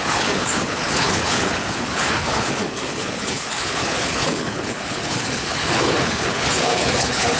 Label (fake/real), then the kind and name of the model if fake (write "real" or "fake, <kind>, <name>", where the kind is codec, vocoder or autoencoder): fake, codec, HILCodec